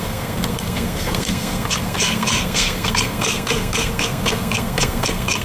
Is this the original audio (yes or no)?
no